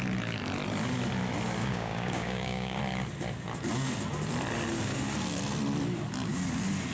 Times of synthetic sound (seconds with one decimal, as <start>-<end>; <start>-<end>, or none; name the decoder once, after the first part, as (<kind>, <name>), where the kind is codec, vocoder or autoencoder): 1.6-2.8 (codec, DAC)